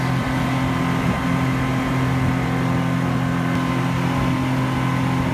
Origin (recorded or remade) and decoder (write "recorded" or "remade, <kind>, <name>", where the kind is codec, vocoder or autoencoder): recorded